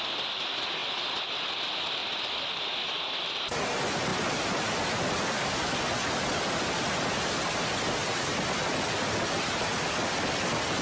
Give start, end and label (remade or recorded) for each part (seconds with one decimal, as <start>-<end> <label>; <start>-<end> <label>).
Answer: 0.0-10.8 recorded